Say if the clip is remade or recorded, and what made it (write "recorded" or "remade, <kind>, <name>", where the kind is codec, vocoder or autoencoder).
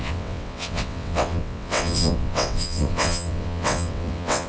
remade, vocoder, WaveNeXt